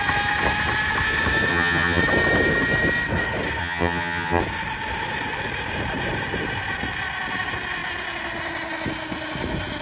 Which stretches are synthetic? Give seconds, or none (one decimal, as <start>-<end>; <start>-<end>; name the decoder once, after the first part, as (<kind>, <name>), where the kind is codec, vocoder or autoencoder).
1.5-2.0 (vocoder, HiFi-GAN); 3.6-4.4